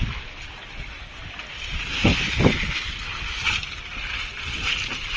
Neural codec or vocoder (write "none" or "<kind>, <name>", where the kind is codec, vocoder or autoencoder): none